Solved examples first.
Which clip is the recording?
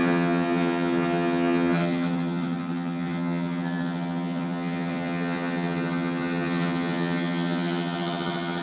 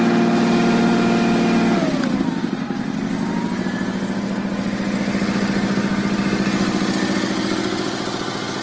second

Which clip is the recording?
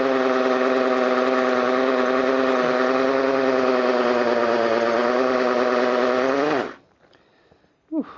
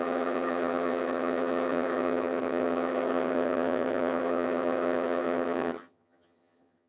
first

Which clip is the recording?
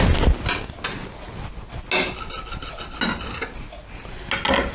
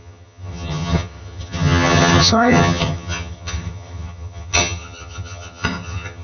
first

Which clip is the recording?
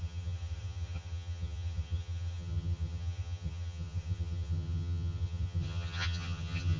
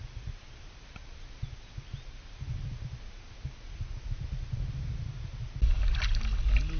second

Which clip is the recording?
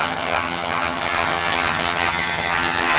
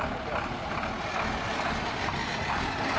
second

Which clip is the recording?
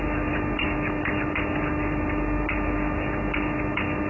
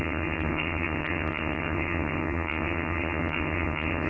first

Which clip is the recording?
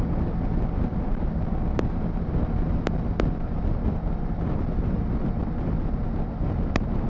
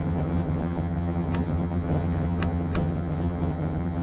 first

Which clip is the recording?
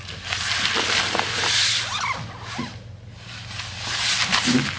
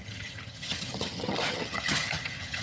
first